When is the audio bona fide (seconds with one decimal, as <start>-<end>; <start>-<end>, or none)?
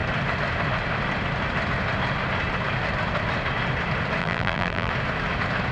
0.0-4.2; 4.9-5.7